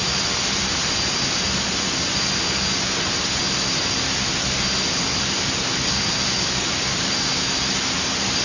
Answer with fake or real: real